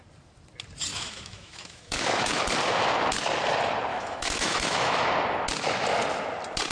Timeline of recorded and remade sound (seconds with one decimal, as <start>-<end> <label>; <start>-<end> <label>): 0.0-0.9 recorded; 0.9-2.4 remade; 2.4-3.9 recorded; 3.9-5.0 remade; 5.0-6.7 recorded